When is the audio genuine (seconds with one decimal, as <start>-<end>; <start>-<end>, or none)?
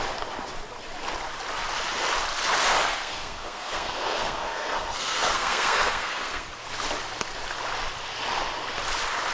0.0-2.8; 6.5-9.3